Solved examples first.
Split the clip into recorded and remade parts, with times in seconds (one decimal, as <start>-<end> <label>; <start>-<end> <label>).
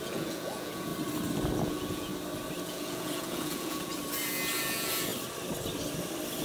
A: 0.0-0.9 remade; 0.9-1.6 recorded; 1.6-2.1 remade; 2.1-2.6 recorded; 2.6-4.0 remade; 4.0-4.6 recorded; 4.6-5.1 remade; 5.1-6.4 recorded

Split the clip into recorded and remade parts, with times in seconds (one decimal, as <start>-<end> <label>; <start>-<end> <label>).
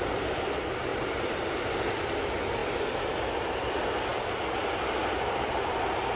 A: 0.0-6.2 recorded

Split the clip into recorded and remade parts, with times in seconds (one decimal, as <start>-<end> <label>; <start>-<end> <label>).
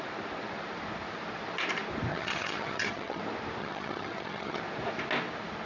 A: 0.0-2.1 recorded; 2.1-3.2 remade; 3.2-3.6 recorded; 3.6-4.6 remade; 4.6-5.7 recorded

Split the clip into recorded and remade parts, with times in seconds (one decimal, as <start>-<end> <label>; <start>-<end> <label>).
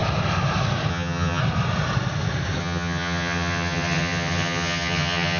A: 0.0-0.9 recorded; 0.9-1.4 remade; 1.4-2.6 recorded; 2.6-5.4 remade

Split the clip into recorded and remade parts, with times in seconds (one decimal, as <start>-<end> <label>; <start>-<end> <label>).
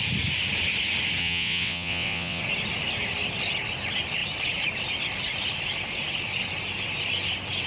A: 0.0-1.2 recorded; 1.2-2.4 remade; 2.4-7.7 recorded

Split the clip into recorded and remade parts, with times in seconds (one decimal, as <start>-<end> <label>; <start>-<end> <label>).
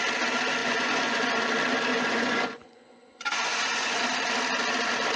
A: 0.0-0.6 recorded; 0.6-1.4 remade; 1.4-1.9 recorded; 1.9-4.0 remade; 4.0-5.2 recorded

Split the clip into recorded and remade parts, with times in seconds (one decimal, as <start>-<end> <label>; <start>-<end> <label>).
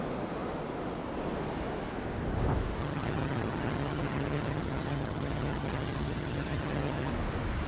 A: 0.0-2.8 recorded; 2.8-7.1 remade; 7.1-7.7 recorded